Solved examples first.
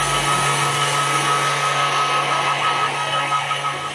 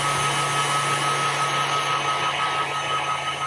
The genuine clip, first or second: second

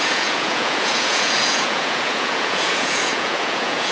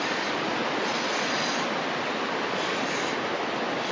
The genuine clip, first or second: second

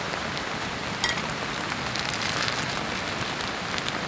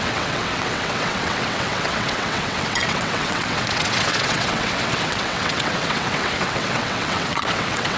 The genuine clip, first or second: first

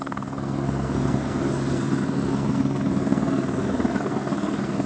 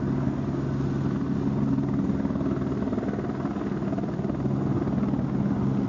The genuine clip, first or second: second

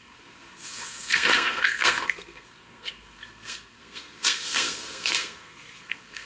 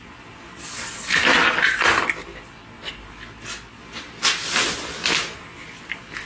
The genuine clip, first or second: second